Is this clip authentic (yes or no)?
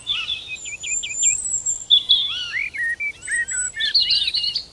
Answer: yes